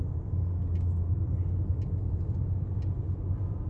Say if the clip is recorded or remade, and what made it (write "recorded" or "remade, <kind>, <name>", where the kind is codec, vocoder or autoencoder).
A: recorded